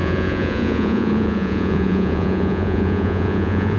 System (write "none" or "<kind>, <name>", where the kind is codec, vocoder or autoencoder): vocoder, Vocos